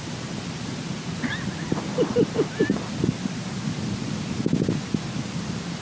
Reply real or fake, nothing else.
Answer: real